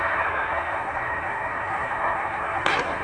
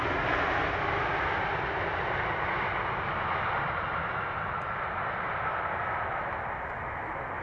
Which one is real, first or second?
second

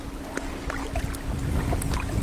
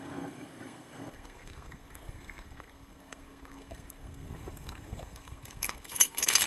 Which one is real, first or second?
first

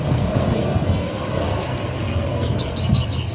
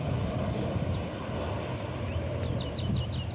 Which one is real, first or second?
second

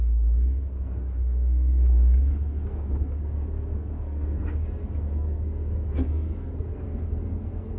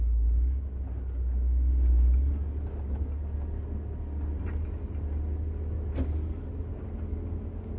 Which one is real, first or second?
second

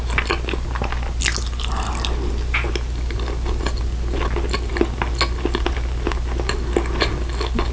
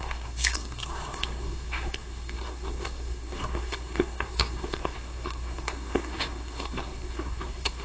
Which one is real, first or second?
first